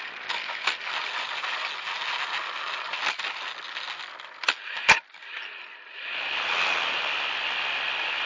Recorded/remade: recorded